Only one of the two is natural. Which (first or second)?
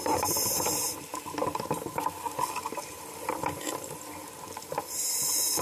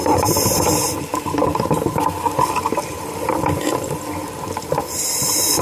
first